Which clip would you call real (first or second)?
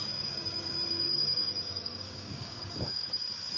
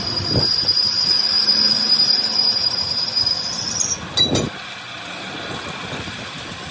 second